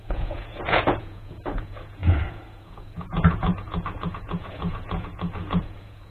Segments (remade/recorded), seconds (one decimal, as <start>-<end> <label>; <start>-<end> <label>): 0.0-6.1 remade